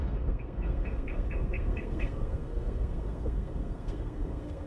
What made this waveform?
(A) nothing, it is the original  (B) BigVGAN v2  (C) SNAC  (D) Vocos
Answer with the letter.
C